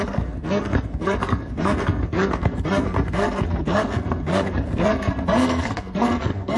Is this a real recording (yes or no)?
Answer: no